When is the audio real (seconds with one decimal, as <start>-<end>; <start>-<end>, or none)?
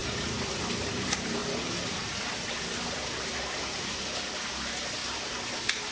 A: 0.0-5.9